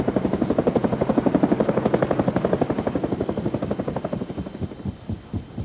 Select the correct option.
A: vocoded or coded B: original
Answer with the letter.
B